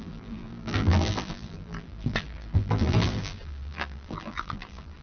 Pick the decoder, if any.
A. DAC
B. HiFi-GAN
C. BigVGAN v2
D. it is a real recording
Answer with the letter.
C